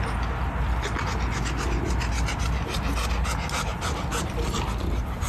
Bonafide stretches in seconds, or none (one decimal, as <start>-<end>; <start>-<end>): 0.0-3.7; 4.5-5.3